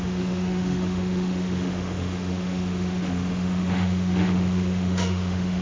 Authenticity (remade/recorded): remade